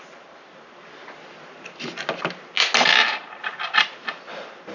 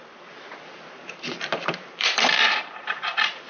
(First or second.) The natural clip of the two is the first